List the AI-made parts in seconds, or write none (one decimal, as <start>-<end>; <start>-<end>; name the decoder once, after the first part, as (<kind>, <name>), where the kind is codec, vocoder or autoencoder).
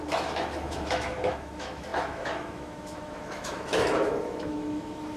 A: 0.0-5.2 (autoencoder, DAC-VAE)